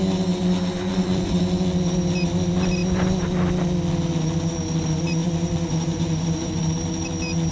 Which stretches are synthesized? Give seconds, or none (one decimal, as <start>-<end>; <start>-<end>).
0.9-1.4; 5.2-6.6